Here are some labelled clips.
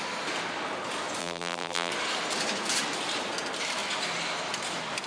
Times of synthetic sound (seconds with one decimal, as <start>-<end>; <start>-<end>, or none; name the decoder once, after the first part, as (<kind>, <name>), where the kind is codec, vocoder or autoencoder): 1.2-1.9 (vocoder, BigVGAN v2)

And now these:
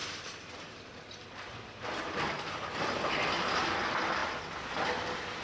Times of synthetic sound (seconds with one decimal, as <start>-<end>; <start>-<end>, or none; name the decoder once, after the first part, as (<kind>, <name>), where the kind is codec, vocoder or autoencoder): 0.0-2.8 (vocoder, BigVGAN v2)

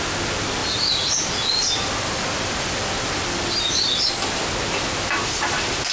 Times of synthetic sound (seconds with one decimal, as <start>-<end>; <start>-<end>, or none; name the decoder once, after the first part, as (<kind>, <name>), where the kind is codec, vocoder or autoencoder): 0.6-4.1 (vocoder, BigVGAN v2)